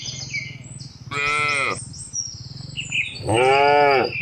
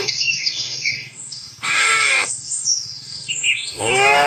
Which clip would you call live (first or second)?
first